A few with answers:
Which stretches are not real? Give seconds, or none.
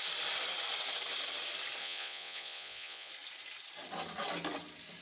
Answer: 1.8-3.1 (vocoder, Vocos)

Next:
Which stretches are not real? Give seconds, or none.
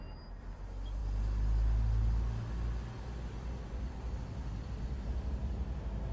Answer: none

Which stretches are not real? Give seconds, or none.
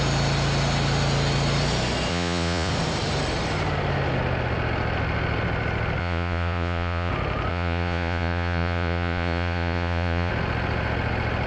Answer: 2.1-2.7 (vocoder, Vocos); 6.0-7.1; 7.5-10.3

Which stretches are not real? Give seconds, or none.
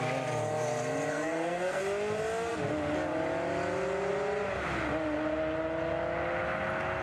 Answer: 1.1-1.8 (codec, SNAC)